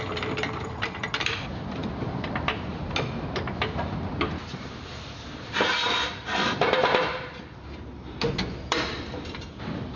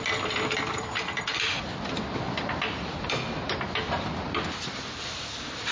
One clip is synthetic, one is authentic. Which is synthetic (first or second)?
first